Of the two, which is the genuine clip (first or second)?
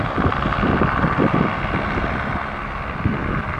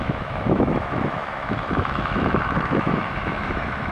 first